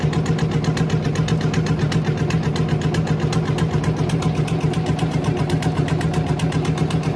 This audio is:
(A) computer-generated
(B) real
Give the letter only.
B